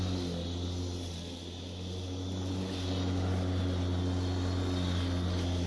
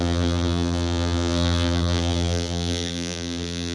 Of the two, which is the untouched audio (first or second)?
first